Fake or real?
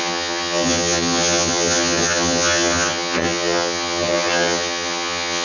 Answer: fake